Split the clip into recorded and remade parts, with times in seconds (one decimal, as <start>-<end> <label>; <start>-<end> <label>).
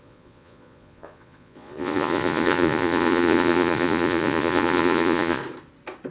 0.0-5.4 remade; 5.4-6.1 recorded